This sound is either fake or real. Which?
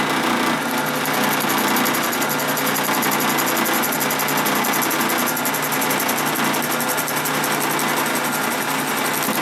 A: real